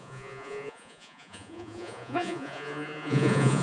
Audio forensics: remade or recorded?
remade